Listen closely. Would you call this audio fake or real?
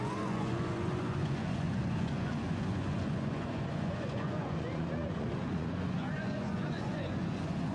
fake